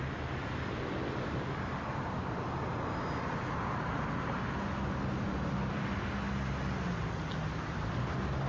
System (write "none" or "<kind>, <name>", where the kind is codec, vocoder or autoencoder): none